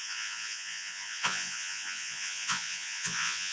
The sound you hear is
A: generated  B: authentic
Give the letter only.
A